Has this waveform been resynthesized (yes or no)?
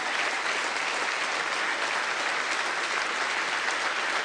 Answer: no